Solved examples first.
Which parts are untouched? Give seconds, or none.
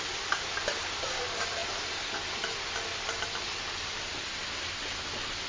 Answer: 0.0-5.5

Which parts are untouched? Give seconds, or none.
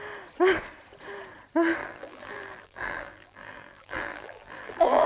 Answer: 0.0-1.8